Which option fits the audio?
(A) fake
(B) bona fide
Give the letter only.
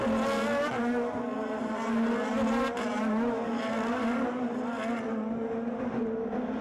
B